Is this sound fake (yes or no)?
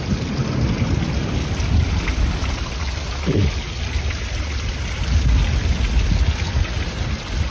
no